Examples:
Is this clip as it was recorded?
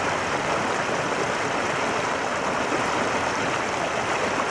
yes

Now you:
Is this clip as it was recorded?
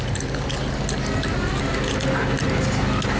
yes